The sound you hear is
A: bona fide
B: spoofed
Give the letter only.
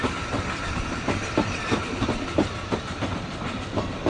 A